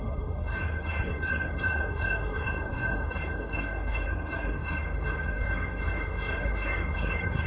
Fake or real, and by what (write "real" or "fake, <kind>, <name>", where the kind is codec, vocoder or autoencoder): fake, codec, SNAC